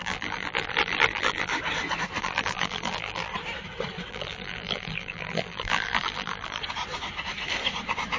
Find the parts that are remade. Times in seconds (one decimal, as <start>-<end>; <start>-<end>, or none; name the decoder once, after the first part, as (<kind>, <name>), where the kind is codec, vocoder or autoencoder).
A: 0.0-1.5 (vocoder, BigVGAN v2); 2.2-3.3; 4.1-6.6